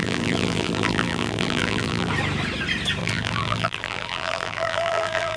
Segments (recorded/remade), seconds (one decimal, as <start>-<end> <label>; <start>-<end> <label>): 0.0-2.1 remade; 2.1-3.0 recorded; 3.0-5.4 remade